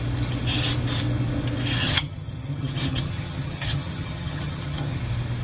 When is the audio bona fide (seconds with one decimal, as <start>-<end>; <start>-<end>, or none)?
0.0-1.8; 5.0-5.4